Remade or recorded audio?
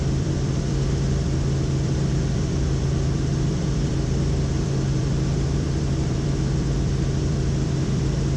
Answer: remade